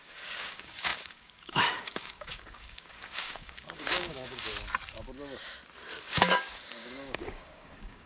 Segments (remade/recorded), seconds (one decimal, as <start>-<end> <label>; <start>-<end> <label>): 0.0-4.5 remade; 4.5-6.0 recorded; 6.0-8.1 remade